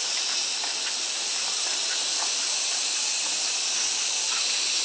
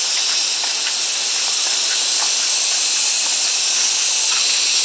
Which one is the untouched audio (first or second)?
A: second